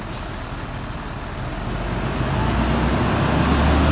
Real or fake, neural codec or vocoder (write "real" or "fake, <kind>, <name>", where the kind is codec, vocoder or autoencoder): real